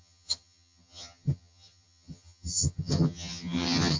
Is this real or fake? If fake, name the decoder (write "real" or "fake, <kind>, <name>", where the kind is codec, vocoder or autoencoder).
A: fake, vocoder, HiFi-GAN